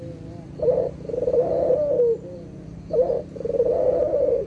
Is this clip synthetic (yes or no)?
yes